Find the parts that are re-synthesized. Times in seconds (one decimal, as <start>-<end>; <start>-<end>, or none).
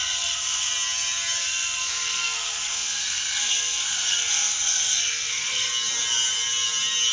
0.0-0.7; 1.4-5.7